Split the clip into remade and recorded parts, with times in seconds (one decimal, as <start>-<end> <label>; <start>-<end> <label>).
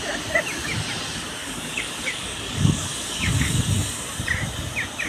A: 0.0-1.4 recorded; 1.4-3.7 remade; 3.7-5.1 recorded